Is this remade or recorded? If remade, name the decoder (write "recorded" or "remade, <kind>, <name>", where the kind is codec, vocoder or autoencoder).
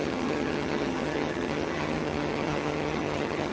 remade, vocoder, HiFi-GAN